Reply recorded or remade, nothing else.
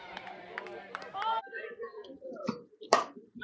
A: remade